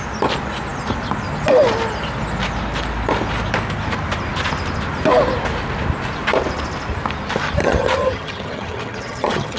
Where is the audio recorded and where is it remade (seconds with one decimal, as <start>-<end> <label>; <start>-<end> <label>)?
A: 0.0-7.6 recorded; 7.6-9.6 remade